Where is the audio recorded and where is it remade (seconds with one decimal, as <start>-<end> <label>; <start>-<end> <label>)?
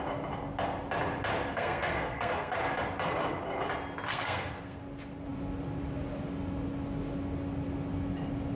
0.0-1.5 recorded; 1.5-2.6 remade; 2.6-4.1 recorded; 4.1-4.8 remade; 4.8-8.6 recorded